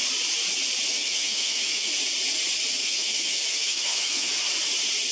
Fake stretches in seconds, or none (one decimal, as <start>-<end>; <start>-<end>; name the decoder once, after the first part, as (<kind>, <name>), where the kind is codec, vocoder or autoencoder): 0.9-1.9 (autoencoder, DAC-VAE); 2.8-4.3